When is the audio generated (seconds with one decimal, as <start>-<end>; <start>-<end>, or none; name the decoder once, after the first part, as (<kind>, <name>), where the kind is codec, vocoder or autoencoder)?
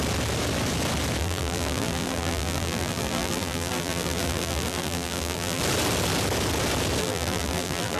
1.2-5.6 (vocoder, BigVGAN v2); 7.0-8.0